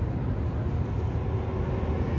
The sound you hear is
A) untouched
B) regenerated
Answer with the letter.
A